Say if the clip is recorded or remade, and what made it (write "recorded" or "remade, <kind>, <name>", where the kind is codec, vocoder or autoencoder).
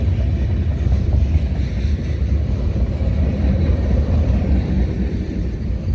recorded